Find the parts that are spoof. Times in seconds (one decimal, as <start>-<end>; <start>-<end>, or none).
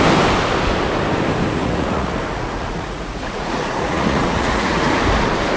1.6-5.0